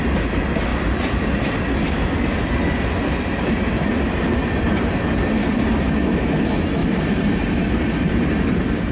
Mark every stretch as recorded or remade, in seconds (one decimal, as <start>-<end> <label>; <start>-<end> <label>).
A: 0.0-6.8 recorded; 6.8-7.5 remade; 7.5-8.9 recorded